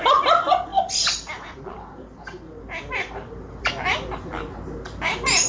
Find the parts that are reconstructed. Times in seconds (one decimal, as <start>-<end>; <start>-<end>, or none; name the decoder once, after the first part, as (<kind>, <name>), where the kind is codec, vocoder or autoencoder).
0.7-3.7 (vocoder, BigVGAN v2)